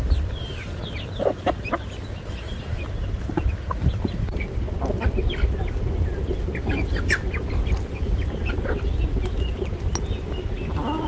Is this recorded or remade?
recorded